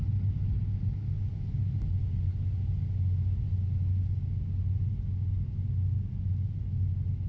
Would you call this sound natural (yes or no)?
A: yes